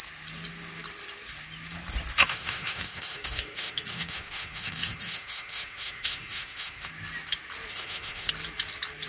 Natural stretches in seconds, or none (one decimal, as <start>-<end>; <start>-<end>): 0.0-2.3; 6.9-7.7; 8.3-9.1